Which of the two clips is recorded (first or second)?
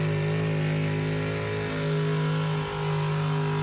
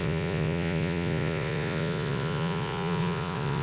first